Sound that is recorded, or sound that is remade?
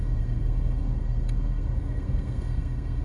remade